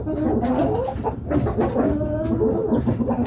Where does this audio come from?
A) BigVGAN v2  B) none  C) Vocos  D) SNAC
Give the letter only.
B